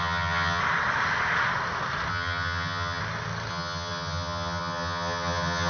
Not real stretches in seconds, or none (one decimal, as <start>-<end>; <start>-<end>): 0.0-0.6; 2.1-3.0; 3.5-5.7